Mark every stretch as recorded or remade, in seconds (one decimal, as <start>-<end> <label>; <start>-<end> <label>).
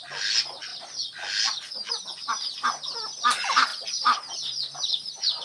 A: 0.0-5.4 recorded